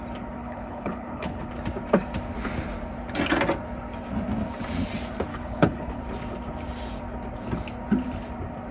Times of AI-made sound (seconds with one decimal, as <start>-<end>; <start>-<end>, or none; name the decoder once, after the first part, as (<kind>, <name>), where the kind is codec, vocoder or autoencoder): 0.4-1.5 (codec, HILCodec); 5.3-6.0